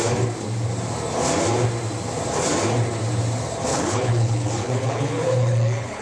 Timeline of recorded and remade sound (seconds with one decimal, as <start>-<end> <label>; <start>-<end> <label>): 0.0-3.7 recorded; 3.7-6.0 remade